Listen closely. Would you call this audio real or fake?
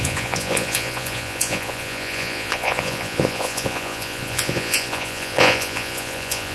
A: fake